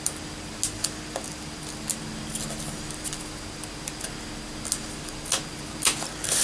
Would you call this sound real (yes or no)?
yes